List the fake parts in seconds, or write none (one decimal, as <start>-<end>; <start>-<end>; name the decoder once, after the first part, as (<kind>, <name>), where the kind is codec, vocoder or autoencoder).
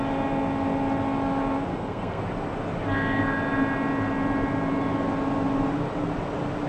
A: 1.7-2.2 (codec, SNAC)